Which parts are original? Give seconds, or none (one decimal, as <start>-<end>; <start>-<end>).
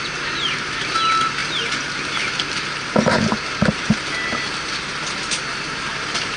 0.0-6.4